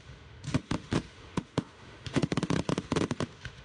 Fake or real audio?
fake